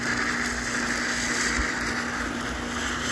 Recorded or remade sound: recorded